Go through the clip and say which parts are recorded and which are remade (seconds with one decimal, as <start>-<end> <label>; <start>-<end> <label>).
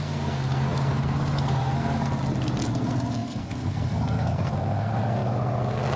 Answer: 0.0-2.2 remade; 2.2-2.7 recorded; 2.7-6.0 remade